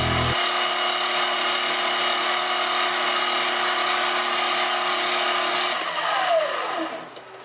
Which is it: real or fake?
real